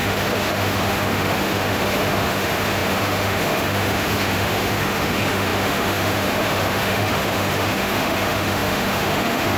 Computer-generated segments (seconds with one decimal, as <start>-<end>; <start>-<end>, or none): 0.0-9.6